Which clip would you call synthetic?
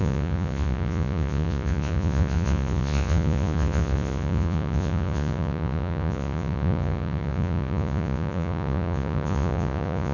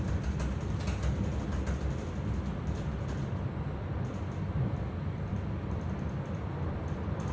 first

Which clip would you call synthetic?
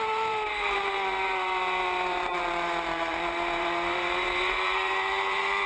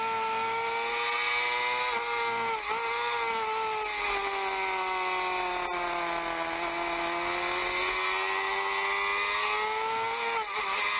first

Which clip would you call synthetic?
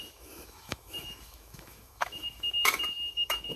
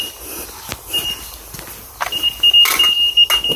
first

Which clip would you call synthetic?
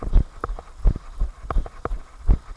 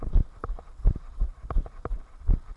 second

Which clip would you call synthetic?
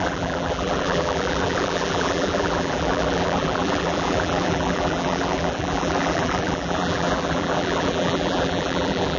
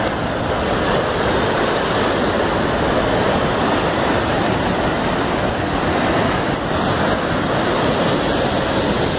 first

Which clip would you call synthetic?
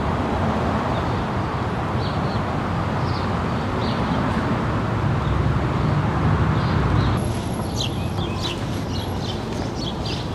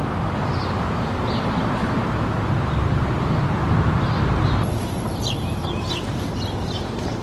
second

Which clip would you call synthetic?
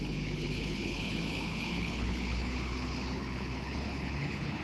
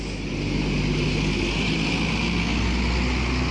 first